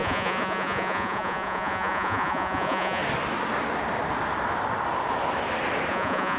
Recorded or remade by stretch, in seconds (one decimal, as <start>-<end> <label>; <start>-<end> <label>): 0.0-3.0 remade; 3.0-5.9 recorded; 5.9-6.4 remade